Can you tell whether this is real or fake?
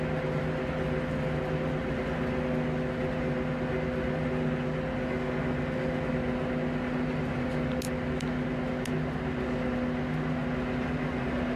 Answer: real